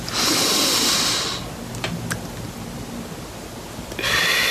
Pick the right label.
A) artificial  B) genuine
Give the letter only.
B